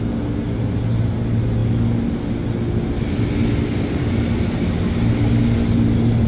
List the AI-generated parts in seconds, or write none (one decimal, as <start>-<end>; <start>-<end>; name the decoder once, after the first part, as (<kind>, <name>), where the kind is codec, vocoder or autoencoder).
none